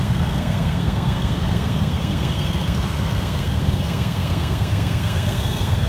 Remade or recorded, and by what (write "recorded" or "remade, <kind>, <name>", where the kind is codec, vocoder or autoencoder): remade, codec, SNAC